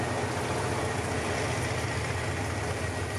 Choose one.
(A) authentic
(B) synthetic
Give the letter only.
A